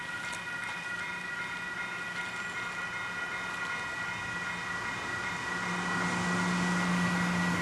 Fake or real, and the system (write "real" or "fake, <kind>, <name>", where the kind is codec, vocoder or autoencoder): real